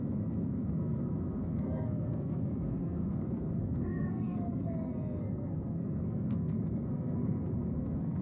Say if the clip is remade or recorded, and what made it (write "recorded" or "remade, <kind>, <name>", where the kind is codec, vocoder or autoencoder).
remade, codec, SNAC